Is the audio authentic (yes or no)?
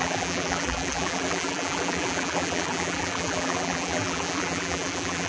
no